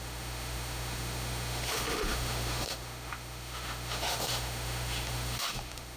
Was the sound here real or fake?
fake